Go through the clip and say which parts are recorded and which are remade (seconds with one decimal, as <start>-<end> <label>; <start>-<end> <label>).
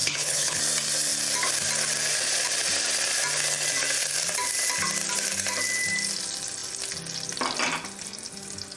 0.0-0.6 remade; 0.6-8.8 recorded